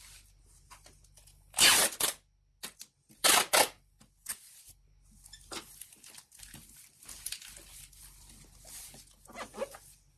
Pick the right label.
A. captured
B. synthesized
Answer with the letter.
A